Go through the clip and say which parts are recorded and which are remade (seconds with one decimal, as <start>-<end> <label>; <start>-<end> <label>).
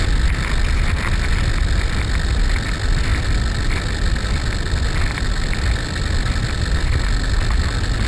0.0-8.1 recorded